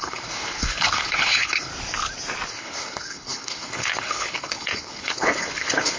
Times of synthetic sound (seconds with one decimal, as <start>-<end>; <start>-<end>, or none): 0.0-1.7; 2.5-6.0